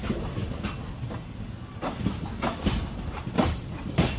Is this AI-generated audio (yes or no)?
no